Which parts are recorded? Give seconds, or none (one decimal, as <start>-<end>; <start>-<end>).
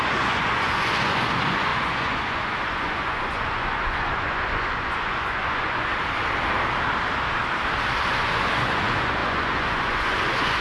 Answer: 5.9-8.1